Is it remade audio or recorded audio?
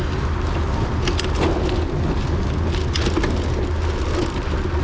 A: recorded